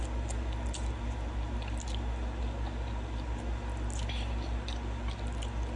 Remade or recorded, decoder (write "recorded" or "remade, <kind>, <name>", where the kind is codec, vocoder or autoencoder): recorded